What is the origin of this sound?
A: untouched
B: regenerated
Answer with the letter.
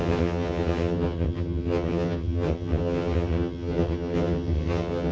B